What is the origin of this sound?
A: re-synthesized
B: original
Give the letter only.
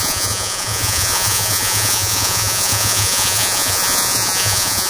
A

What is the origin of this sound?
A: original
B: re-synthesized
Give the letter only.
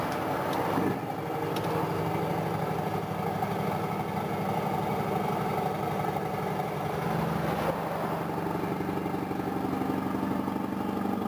A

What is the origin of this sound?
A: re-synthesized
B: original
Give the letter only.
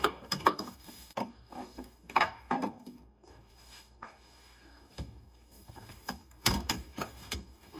A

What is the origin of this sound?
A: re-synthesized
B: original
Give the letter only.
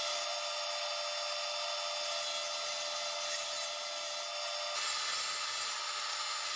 B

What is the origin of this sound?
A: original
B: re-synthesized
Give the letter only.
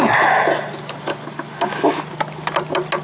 A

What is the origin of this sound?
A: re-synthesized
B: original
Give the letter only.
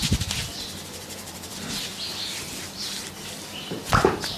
A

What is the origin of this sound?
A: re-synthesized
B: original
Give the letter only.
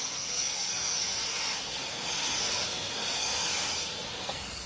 A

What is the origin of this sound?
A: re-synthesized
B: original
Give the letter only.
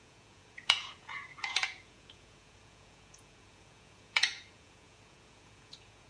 A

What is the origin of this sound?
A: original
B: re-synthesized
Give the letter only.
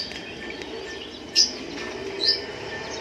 A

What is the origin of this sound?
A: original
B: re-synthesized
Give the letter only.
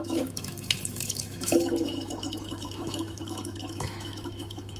B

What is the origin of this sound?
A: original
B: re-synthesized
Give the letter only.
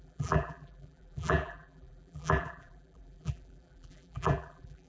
B